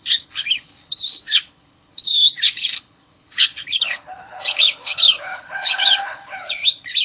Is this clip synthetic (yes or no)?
yes